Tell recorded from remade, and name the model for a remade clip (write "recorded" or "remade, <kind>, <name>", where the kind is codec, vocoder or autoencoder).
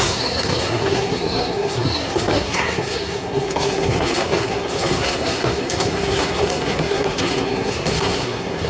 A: remade, codec, SNAC